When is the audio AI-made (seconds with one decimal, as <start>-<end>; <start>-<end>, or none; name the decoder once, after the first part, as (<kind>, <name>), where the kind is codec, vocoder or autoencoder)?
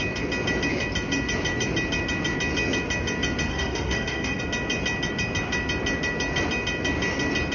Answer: 3.5-4.4 (autoencoder, DAC-VAE)